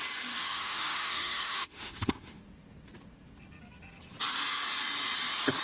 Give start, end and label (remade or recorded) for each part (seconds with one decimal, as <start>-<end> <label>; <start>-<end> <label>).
0.0-0.4 recorded; 0.4-2.4 remade; 2.4-5.6 recorded